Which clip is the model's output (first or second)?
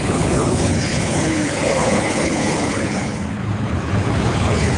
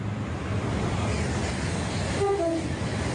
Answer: first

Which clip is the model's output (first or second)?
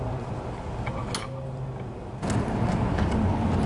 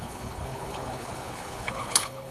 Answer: second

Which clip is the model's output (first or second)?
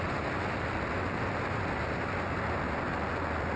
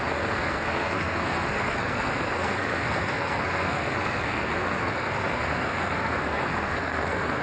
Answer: second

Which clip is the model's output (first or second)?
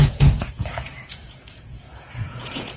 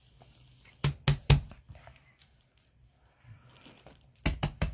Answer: first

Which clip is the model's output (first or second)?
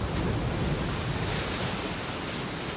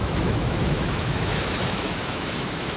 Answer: second